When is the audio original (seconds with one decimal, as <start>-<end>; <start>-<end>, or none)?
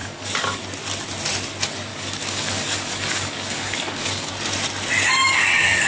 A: 0.6-1.9; 4.3-5.2